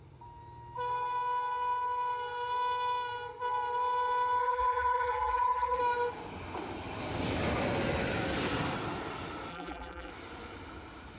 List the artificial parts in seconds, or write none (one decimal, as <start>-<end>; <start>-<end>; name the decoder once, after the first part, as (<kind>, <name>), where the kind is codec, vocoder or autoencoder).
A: 4.4-5.8 (vocoder, BigVGAN v2); 9.5-10.1